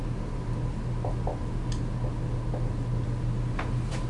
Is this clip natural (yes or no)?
yes